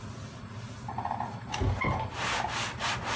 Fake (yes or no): no